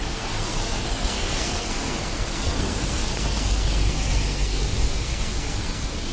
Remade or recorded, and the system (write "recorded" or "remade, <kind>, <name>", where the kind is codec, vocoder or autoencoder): remade, codec, SNAC